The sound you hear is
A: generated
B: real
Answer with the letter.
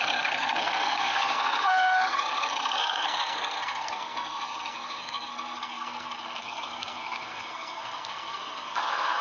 A